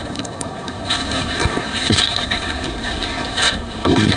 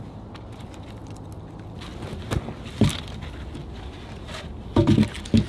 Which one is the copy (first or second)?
first